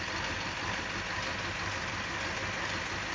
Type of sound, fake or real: real